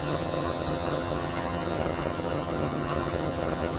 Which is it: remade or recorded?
remade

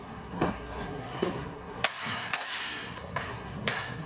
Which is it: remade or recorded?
remade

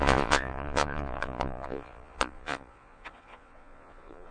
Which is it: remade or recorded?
remade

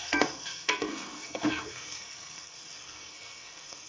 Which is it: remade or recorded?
remade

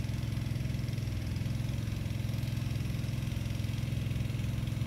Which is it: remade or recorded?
recorded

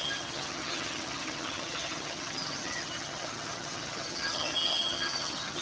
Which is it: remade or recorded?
remade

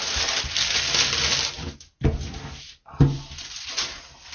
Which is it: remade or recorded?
recorded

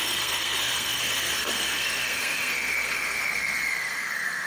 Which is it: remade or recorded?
remade